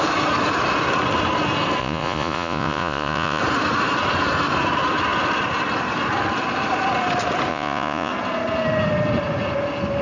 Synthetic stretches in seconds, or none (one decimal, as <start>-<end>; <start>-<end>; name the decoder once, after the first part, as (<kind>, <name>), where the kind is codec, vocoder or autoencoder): 1.8-3.4 (vocoder, Vocos); 7.5-8.1